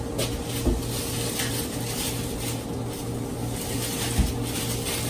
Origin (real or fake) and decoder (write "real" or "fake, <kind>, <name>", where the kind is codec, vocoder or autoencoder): real